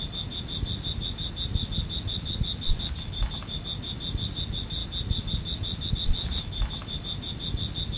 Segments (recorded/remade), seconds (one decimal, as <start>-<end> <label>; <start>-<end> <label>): 0.0-8.0 recorded